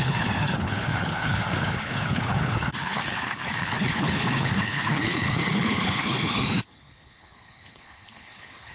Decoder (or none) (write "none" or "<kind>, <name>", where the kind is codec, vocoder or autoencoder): codec, HILCodec